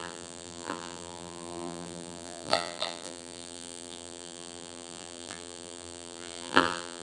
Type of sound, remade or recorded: remade